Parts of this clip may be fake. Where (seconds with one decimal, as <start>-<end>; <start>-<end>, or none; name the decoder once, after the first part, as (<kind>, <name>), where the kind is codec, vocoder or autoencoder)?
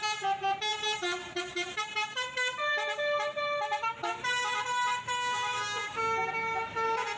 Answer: 5.2-6.3 (codec, DAC)